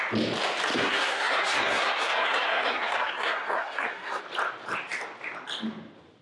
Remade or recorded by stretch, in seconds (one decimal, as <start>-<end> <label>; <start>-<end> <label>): 0.0-0.7 recorded; 0.7-4.2 remade; 4.2-6.2 recorded